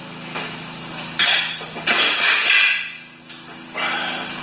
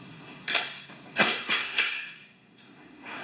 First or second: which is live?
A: first